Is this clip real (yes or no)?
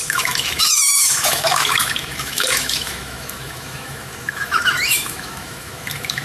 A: no